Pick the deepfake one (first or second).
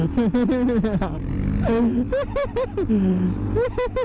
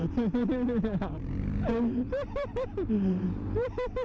second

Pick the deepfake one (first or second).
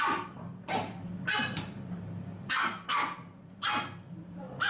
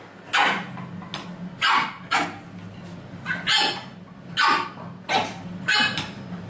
first